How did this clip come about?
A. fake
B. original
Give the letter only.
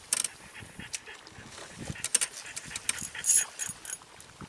B